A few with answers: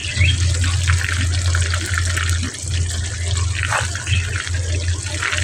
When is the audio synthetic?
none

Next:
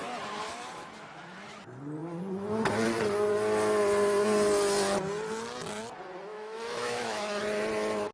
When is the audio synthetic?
6.3-7.4